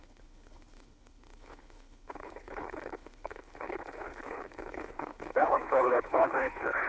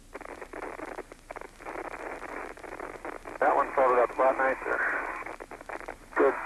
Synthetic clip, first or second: first